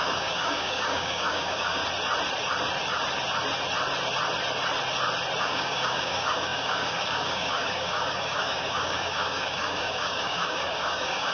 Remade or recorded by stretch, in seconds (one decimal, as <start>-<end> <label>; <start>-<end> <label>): 0.0-1.8 remade; 1.8-5.4 recorded; 5.4-11.3 remade